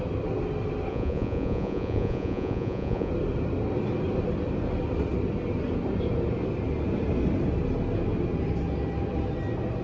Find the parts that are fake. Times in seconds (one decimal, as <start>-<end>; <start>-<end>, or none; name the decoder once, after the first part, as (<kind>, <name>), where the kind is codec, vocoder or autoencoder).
0.9-3.1 (vocoder, Vocos)